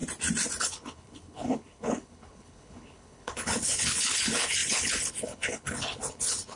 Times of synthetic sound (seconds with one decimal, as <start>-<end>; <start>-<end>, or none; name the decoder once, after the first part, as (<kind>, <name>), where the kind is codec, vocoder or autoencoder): 0.6-6.6 (codec, HILCodec)